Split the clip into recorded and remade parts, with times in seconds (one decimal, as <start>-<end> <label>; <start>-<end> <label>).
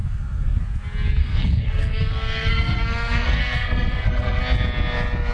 0.0-0.6 remade; 0.6-1.2 recorded; 1.2-4.4 remade; 4.4-5.3 recorded